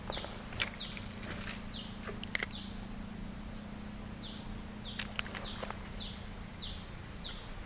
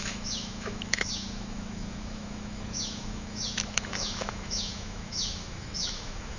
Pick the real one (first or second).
first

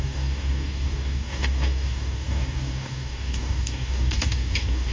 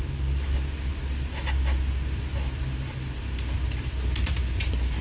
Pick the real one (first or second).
second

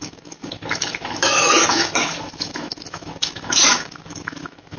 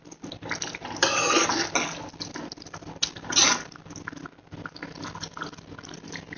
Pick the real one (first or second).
second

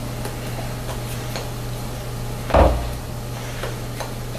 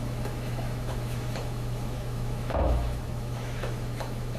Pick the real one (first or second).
first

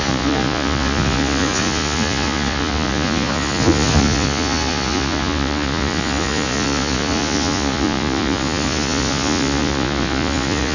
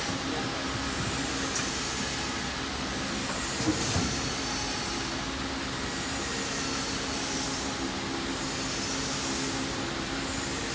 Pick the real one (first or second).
second